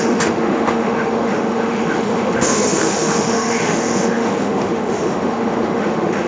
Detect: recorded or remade remade